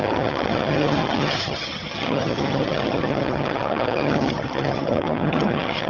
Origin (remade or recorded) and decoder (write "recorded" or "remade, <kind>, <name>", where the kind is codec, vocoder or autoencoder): remade, vocoder, HiFi-GAN